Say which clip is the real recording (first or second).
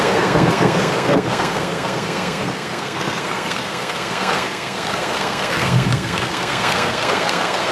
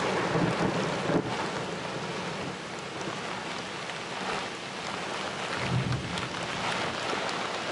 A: second